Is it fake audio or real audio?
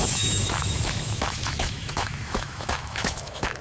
fake